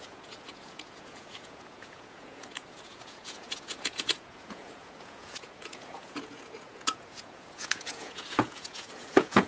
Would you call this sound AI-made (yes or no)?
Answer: yes